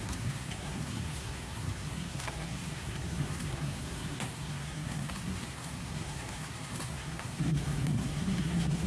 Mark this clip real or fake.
fake